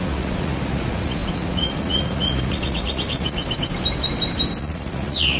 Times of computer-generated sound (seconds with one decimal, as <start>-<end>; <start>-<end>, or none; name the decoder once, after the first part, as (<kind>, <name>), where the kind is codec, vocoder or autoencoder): 0.0-3.4 (vocoder, Vocos); 4.6-5.4